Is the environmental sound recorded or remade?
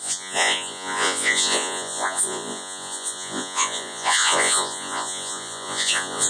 remade